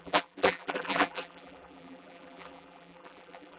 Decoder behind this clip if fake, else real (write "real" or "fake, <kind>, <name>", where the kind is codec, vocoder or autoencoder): fake, vocoder, BigVGAN v2